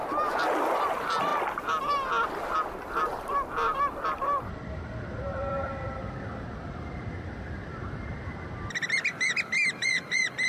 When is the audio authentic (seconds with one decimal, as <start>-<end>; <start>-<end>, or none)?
none